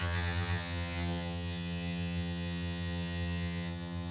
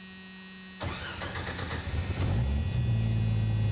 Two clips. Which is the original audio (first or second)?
second